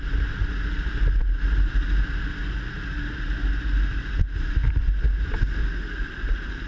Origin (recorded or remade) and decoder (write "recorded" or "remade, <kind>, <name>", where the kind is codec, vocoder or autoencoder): recorded